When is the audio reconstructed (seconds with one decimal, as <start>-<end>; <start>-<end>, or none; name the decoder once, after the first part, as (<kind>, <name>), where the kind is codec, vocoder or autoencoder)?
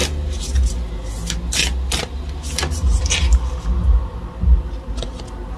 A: none